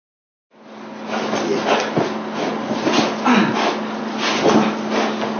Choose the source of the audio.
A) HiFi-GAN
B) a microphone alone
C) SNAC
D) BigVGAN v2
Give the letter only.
B